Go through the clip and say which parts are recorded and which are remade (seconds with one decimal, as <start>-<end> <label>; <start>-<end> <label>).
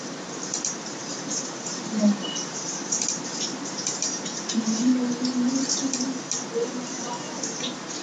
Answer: 0.0-4.9 remade; 4.9-6.6 recorded; 6.6-8.0 remade